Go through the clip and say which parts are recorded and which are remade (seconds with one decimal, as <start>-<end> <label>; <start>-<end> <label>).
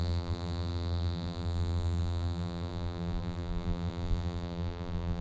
0.0-5.2 remade